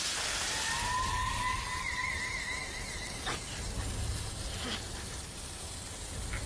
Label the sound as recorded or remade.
recorded